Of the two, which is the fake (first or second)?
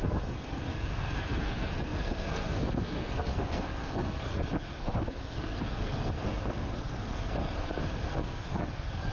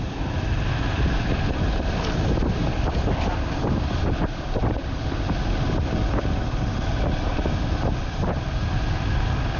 first